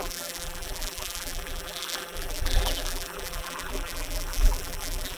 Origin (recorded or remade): remade